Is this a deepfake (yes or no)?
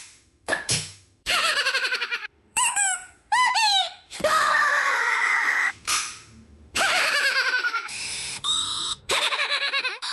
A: yes